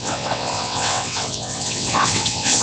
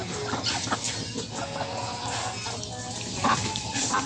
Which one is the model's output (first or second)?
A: first